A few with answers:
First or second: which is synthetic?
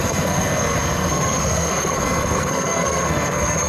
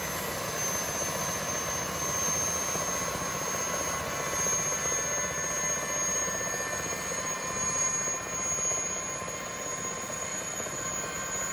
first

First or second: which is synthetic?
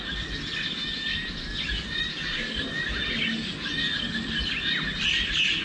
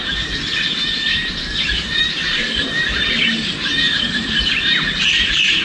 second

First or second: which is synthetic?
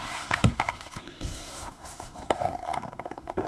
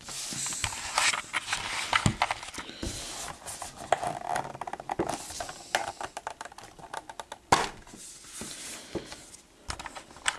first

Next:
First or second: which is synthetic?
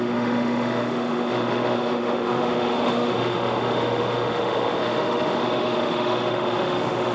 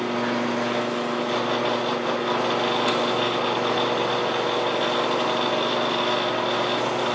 first